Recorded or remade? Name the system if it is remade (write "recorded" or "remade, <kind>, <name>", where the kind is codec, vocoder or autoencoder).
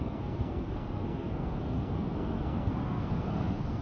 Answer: remade, codec, SNAC